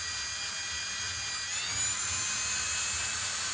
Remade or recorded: recorded